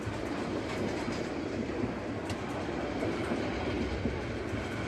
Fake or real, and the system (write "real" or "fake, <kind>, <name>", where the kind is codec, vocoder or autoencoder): real